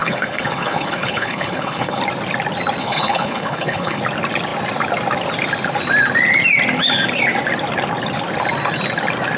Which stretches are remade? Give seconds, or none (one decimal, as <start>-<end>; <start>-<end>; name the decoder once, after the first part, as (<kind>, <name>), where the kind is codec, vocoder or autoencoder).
0.0-2.0 (codec, HILCodec); 2.8-4.0

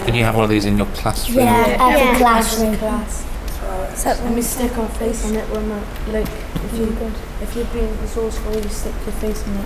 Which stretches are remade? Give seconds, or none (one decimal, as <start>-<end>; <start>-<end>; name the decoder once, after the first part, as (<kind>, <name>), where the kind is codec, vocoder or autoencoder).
0.0-0.8 (codec, SNAC)